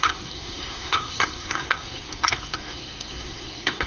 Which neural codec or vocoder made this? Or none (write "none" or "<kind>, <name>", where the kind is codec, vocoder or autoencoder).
codec, SNAC